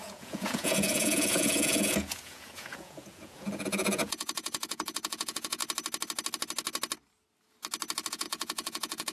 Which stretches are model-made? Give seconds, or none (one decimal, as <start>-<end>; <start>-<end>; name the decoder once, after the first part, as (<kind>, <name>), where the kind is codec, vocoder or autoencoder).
0.0-5.6 (vocoder, Vocos); 8.1-9.1